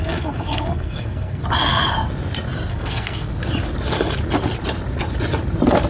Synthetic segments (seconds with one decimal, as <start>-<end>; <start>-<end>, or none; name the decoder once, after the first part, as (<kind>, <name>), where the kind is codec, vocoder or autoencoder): 0.0-1.4 (codec, SNAC); 2.7-3.3